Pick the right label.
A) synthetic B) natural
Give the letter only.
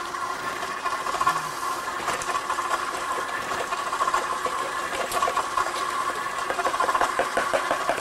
A